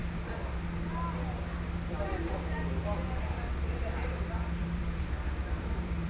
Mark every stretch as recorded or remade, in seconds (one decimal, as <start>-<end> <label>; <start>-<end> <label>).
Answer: 0.0-2.8 recorded; 2.8-3.7 remade; 3.7-4.6 recorded; 4.6-6.1 remade